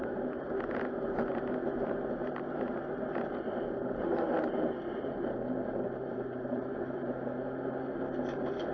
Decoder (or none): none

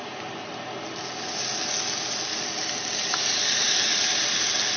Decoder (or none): none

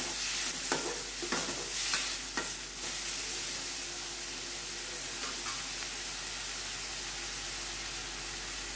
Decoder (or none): none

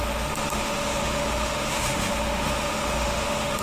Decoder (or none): autoencoder, DAC-VAE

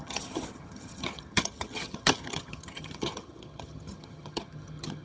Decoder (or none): vocoder, HiFi-GAN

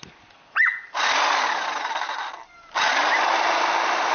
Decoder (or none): none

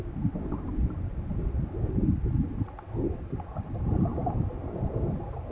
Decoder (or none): none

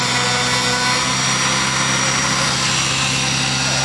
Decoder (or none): none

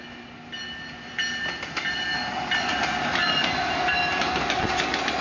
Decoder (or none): none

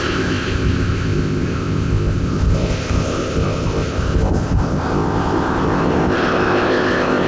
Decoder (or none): codec, ZipCodec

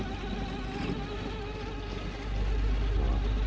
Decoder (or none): none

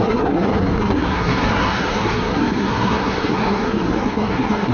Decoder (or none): codec, SNAC